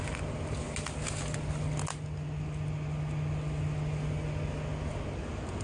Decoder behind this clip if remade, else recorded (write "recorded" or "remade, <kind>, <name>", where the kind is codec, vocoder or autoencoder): recorded